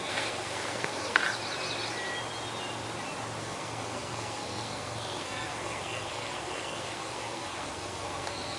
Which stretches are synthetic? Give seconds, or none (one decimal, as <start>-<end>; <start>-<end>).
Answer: 0.0-1.2; 3.4-8.6